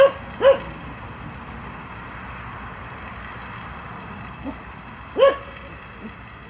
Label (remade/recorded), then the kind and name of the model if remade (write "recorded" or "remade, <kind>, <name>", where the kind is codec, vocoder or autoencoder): recorded